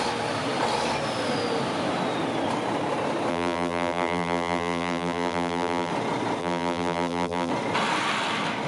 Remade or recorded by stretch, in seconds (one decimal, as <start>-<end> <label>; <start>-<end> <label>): 0.0-3.3 recorded; 3.3-5.9 remade; 5.9-6.4 recorded; 6.4-7.5 remade; 7.5-8.7 recorded